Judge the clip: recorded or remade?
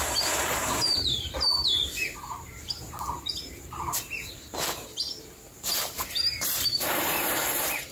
remade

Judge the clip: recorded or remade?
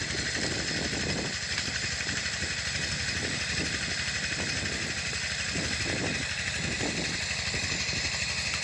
recorded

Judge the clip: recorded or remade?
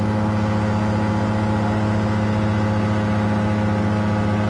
recorded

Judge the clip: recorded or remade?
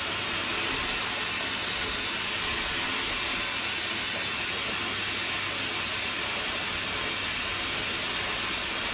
recorded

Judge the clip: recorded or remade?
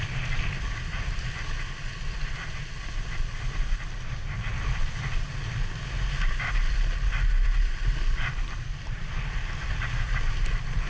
recorded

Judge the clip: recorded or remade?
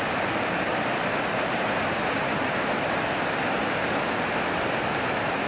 recorded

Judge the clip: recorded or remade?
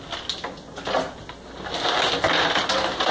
recorded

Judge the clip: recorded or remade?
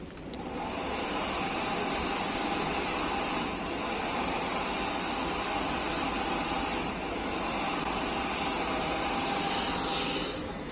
recorded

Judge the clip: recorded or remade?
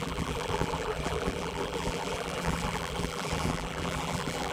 remade